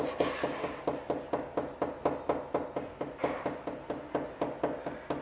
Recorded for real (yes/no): yes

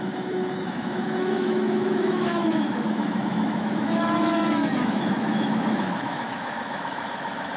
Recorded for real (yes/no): no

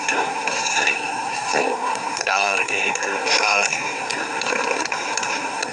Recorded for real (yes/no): no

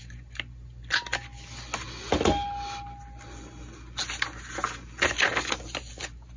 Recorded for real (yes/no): yes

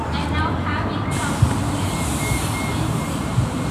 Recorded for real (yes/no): no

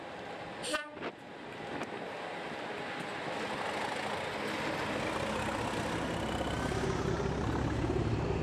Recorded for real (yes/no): yes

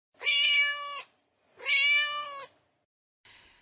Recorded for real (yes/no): yes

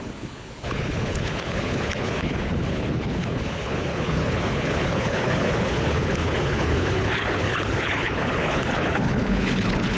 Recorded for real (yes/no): no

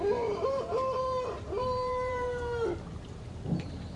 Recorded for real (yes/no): no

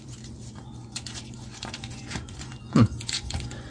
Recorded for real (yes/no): no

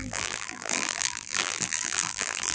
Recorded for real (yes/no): no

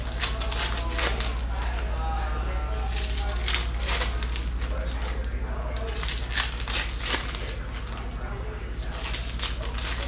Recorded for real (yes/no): yes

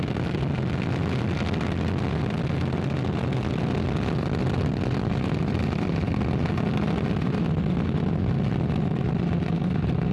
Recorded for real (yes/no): yes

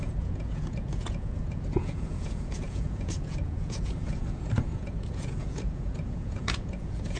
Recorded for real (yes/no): no